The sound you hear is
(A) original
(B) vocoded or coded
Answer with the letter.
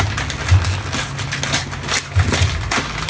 A